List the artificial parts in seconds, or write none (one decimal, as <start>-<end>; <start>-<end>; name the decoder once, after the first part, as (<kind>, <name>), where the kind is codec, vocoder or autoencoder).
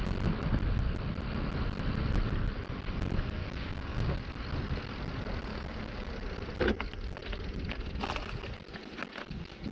3.4-4.2 (codec, DAC); 5.5-6.1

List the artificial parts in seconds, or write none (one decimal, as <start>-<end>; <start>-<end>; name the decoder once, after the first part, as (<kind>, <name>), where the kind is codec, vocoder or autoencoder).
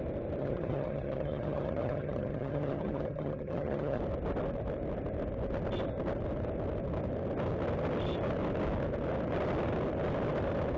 0.4-4.0 (vocoder, HiFi-GAN)